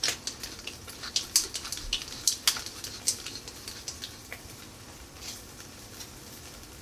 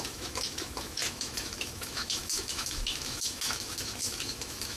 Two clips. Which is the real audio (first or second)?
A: first